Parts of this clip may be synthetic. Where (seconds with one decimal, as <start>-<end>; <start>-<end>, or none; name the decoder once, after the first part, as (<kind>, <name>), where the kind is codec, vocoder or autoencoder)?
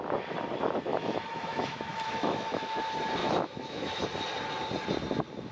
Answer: 0.9-2.8 (autoencoder, DAC-VAE); 3.2-4.0